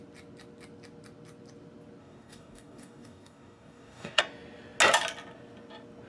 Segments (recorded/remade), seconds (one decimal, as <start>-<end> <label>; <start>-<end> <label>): 0.0-2.0 recorded; 2.0-4.2 remade; 4.2-6.1 recorded